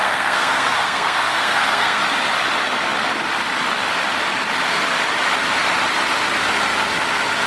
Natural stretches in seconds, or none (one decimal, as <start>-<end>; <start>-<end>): 2.0-7.5